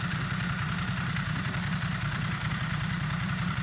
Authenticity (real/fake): fake